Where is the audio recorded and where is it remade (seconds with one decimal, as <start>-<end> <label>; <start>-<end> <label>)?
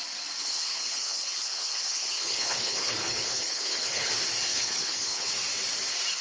0.0-0.4 recorded; 0.4-4.1 remade; 4.1-4.5 recorded; 4.5-5.3 remade; 5.3-6.2 recorded